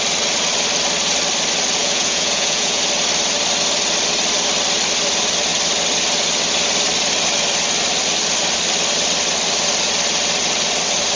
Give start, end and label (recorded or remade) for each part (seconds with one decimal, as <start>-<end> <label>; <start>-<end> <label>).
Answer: 0.0-1.8 recorded; 1.8-2.8 remade; 2.8-11.2 recorded